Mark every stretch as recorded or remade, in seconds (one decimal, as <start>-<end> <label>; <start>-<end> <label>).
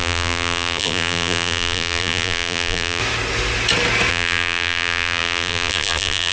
0.0-3.0 remade; 3.0-4.1 recorded; 4.1-6.3 remade